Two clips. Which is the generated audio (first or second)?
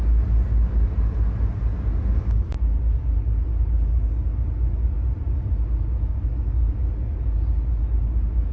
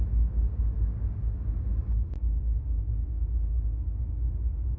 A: second